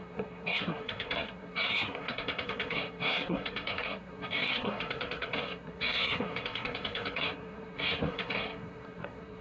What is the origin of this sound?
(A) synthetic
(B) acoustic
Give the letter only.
A